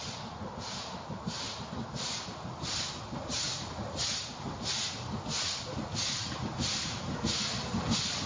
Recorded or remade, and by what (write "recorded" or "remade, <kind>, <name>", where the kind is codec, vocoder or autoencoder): recorded